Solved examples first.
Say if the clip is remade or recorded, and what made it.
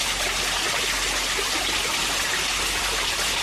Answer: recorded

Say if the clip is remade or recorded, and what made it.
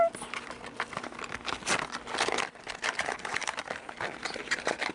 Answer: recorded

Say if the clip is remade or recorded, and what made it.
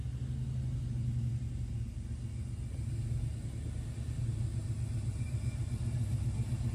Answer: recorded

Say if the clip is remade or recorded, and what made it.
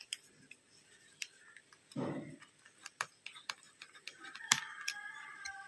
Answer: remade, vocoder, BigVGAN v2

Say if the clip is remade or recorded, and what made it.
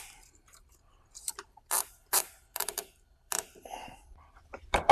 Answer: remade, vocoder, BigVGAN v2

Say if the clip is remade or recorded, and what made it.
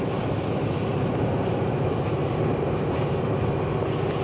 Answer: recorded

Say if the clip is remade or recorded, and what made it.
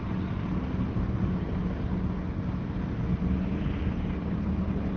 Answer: recorded